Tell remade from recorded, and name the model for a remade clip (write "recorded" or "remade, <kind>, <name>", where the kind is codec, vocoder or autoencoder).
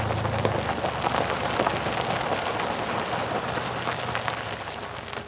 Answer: recorded